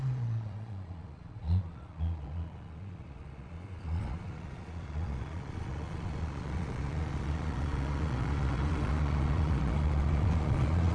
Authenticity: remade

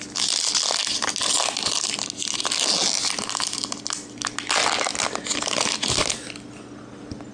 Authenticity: recorded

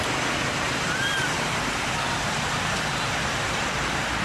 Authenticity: recorded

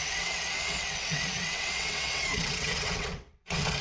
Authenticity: remade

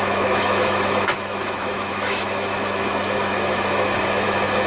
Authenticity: remade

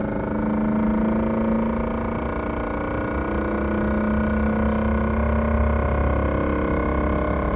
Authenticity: recorded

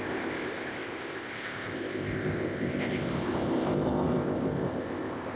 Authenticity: remade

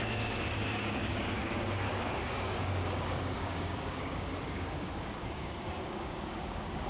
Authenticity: remade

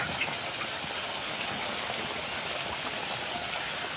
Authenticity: recorded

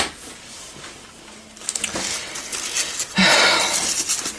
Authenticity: recorded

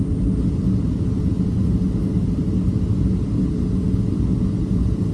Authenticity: recorded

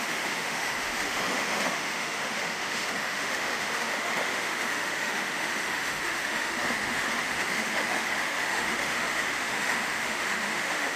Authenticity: remade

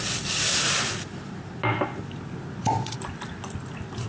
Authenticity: recorded